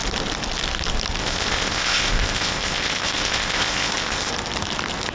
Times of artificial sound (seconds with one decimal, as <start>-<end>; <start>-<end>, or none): 1.2-4.3